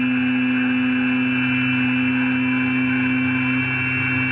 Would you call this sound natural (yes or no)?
yes